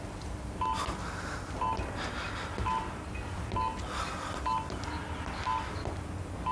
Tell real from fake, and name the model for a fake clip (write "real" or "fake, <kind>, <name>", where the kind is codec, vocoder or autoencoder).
real